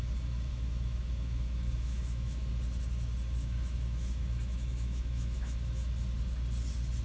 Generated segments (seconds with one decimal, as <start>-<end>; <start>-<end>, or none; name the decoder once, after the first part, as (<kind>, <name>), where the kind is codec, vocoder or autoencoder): 0.5-2.5 (autoencoder, DAC-VAE); 3.4-5.9